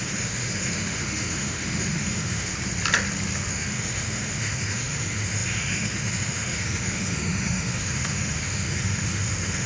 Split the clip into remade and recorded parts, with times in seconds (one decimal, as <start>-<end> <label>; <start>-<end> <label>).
0.0-2.5 remade; 2.5-3.5 recorded; 3.5-9.7 remade